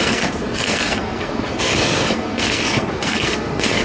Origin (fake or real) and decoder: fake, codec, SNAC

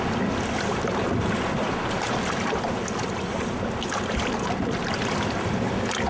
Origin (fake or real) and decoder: real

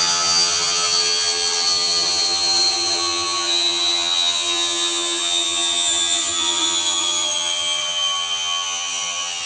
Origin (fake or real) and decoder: fake, vocoder, HiFi-GAN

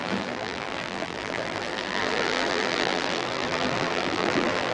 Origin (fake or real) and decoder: fake, vocoder, BigVGAN v2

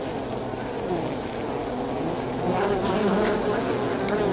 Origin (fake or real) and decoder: real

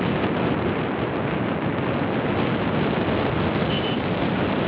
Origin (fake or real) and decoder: real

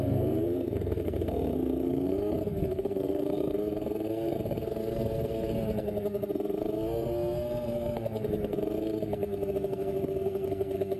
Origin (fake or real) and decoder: fake, codec, SNAC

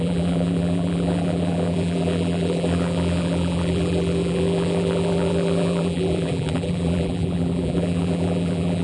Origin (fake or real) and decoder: fake, vocoder, BigVGAN v2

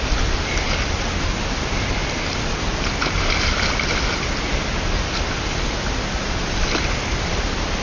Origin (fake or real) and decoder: real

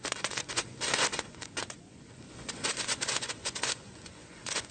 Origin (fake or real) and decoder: fake, vocoder, Vocos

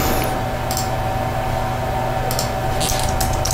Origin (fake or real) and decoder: real